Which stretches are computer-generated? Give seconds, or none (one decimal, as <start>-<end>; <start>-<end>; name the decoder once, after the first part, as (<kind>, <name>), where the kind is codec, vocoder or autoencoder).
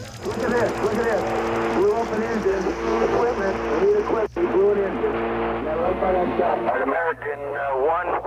2.5-3.2 (codec, SNAC); 5.8-7.7